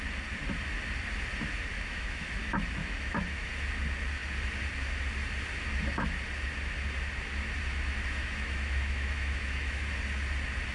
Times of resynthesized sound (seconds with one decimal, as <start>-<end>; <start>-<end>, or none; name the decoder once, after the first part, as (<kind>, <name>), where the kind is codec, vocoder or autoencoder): 1.7-2.4 (autoencoder, DAC-VAE); 2.8-3.5; 8.2-9.9